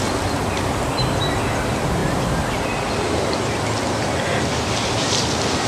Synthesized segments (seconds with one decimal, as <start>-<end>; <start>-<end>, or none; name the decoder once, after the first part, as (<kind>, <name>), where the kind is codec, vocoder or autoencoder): none